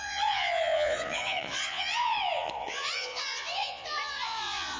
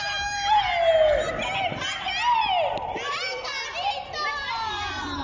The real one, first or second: second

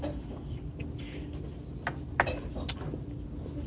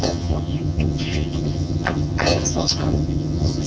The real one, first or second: first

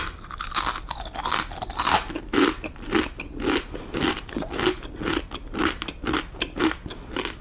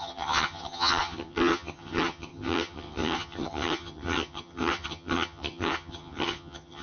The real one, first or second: first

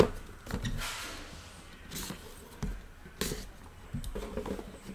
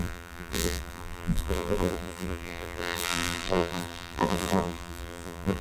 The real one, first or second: first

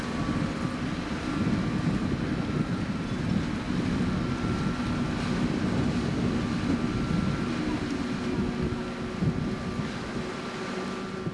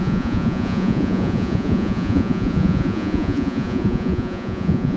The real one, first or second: first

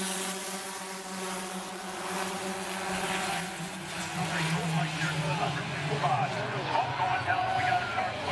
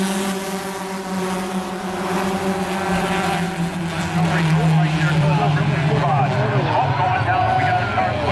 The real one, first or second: second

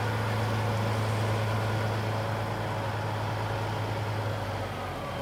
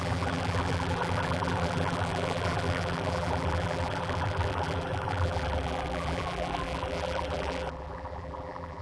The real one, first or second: first